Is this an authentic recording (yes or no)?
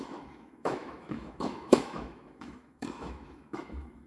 no